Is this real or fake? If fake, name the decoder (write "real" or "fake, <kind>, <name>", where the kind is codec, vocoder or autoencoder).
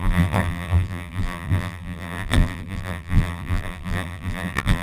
fake, vocoder, BigVGAN v2